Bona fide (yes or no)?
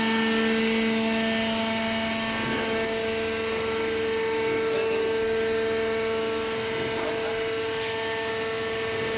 yes